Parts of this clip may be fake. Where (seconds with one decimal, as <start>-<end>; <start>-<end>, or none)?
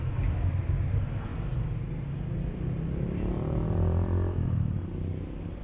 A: none